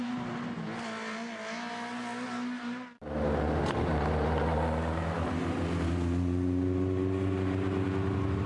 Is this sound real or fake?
real